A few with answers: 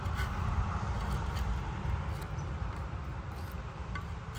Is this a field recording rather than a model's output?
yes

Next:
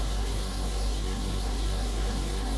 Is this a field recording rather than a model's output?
no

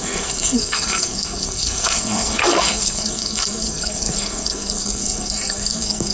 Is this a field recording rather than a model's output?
no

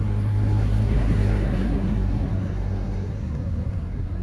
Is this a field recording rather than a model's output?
no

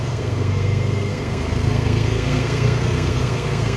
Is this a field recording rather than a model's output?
no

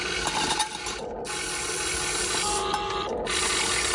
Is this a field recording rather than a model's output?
yes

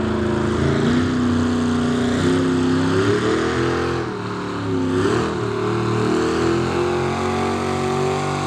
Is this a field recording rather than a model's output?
yes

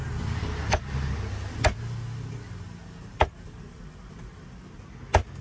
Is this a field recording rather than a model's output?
yes